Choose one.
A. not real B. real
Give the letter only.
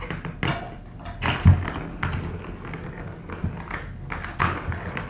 B